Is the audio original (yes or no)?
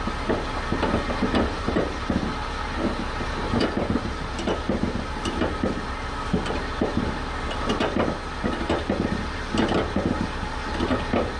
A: yes